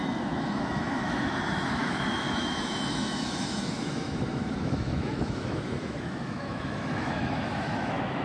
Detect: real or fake fake